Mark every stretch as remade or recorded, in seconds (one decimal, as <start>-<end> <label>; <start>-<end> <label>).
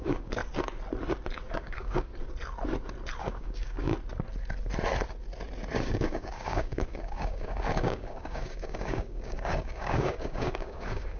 0.0-0.4 remade; 0.4-1.5 recorded; 1.5-2.1 remade; 2.1-3.2 recorded; 3.2-3.9 remade; 3.9-5.9 recorded; 5.9-11.2 remade